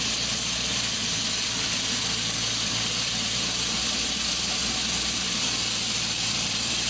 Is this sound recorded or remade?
remade